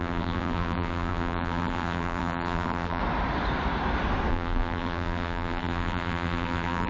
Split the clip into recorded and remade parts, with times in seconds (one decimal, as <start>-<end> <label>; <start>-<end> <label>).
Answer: 0.0-3.0 remade; 3.0-4.3 recorded; 4.3-6.9 remade